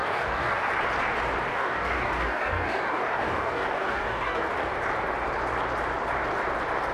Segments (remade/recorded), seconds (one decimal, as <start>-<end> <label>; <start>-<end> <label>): 0.0-0.7 remade; 0.7-1.5 recorded; 1.5-4.5 remade; 4.5-6.9 recorded